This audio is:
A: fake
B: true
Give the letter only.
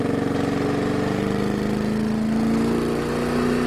B